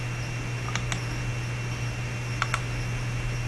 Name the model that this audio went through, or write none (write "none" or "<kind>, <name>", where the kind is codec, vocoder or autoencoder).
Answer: none